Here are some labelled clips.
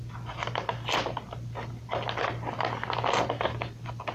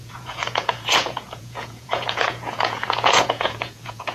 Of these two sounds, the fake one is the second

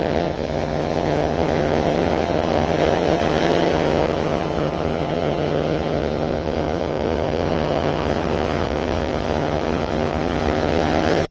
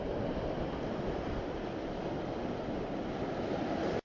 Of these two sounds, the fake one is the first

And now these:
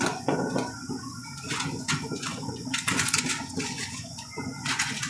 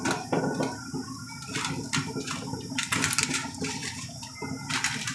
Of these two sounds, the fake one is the first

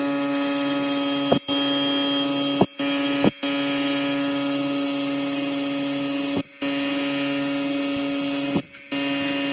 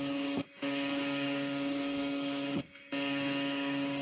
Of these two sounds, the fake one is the second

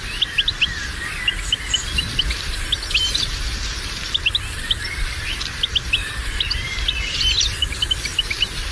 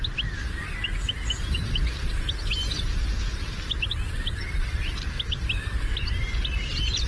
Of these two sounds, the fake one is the first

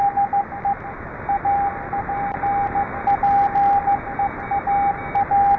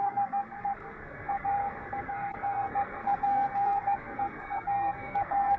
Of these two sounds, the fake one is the second